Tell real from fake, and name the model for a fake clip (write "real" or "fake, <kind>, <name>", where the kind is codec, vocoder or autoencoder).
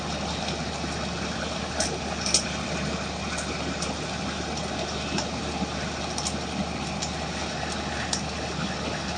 real